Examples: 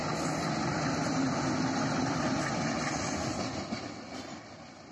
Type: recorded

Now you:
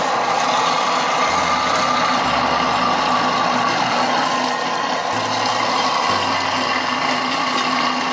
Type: recorded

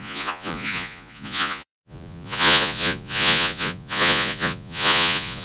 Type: remade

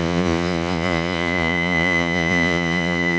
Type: remade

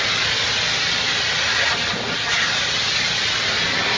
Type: recorded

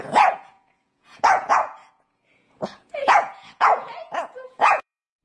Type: remade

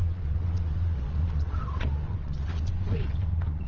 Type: remade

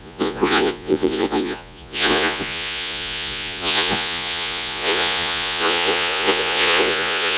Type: remade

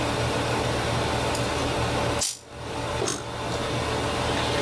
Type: recorded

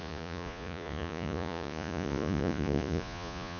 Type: remade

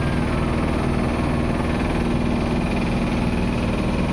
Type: recorded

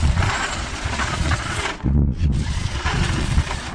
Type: remade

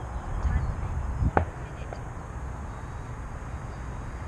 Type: recorded